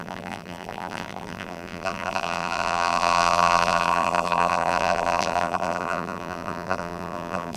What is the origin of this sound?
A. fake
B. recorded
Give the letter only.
A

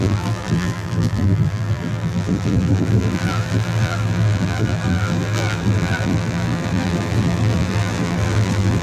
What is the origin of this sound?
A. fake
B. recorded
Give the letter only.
A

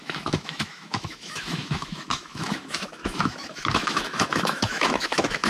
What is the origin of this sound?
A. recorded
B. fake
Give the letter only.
B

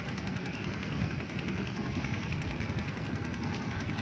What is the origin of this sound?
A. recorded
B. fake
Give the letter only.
B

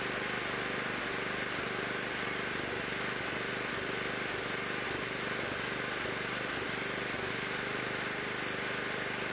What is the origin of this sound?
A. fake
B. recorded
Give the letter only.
B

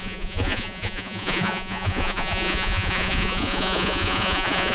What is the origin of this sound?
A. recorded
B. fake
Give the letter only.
B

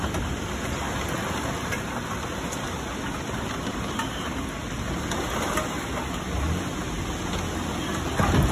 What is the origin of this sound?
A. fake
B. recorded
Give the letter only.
B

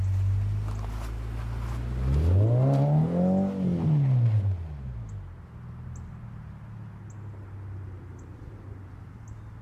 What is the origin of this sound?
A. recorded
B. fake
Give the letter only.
A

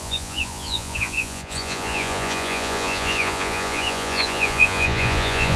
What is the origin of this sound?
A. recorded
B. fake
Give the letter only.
B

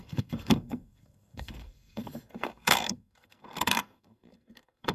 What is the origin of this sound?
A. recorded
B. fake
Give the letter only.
B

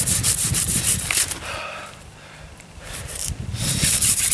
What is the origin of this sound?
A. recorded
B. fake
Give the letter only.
B